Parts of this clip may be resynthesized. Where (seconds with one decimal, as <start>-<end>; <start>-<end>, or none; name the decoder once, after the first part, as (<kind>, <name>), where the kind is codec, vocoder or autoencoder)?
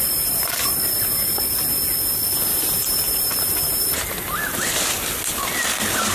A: 0.0-0.8 (vocoder, BigVGAN v2); 2.5-4.0